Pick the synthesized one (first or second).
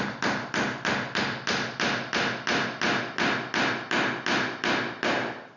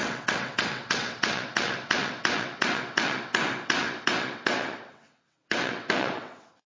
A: second